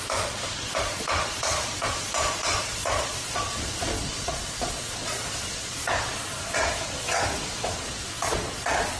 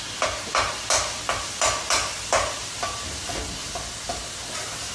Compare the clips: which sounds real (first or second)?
second